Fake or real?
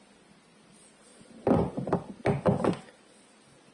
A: real